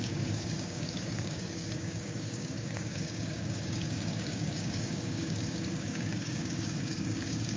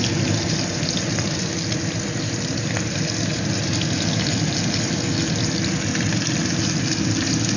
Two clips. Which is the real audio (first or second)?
second